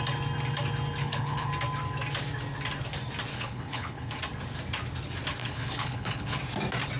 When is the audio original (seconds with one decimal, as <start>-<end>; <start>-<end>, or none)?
0.0-1.0; 1.5-3.3; 4.2-5.4; 6.4-7.0